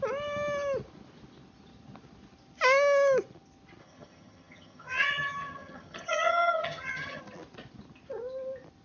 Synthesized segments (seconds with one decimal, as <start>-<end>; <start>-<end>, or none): 3.8-7.2